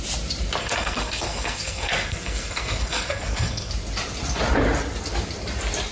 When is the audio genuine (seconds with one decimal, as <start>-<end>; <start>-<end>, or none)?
0.0-0.6; 3.7-5.9